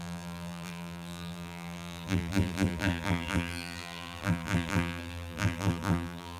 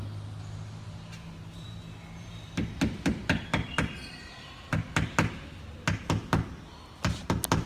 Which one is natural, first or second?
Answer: second